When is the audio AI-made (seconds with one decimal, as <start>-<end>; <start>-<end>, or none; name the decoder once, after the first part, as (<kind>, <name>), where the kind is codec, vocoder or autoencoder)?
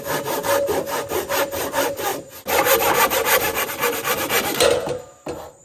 none